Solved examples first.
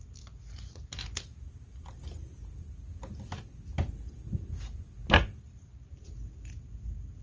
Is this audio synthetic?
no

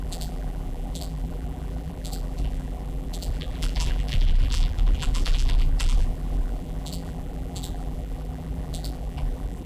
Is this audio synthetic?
yes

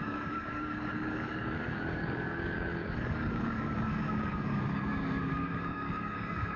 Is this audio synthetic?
yes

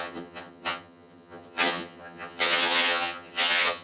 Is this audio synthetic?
yes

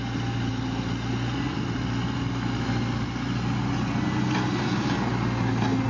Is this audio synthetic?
no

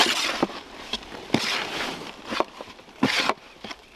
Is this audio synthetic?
yes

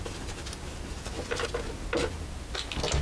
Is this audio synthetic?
no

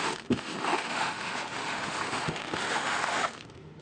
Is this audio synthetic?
yes